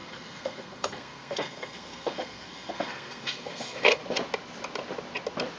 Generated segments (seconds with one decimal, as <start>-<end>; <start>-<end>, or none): 0.0-4.0